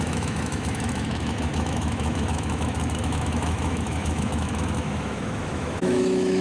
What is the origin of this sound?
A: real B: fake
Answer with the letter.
B